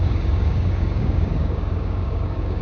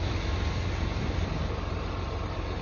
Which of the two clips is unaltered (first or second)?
second